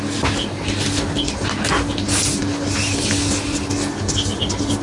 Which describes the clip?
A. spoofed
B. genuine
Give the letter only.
B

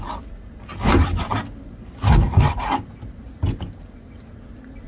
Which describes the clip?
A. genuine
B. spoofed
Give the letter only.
A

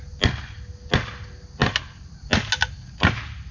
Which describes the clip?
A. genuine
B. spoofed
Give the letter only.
A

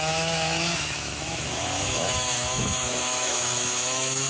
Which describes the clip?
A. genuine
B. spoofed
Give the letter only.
B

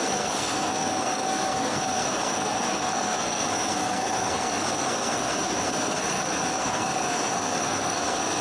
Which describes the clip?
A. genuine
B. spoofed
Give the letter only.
B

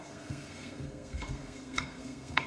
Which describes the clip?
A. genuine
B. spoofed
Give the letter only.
B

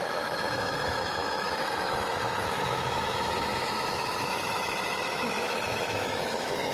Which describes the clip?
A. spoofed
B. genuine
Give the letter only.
A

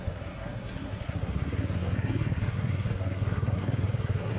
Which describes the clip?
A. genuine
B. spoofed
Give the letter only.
B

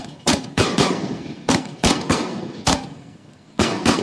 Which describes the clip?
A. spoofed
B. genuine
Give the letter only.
A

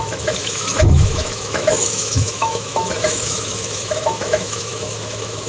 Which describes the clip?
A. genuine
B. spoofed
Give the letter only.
B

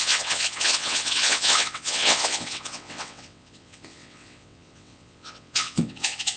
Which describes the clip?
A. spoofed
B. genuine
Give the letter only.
A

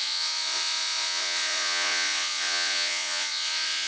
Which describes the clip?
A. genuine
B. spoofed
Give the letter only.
B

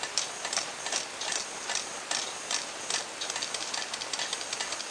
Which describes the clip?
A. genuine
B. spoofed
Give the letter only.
A